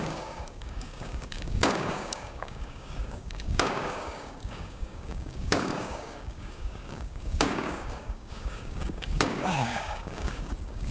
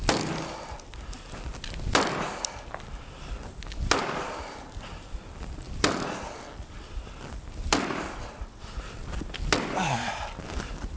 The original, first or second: second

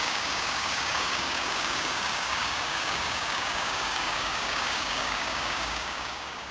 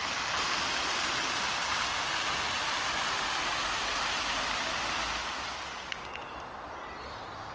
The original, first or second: second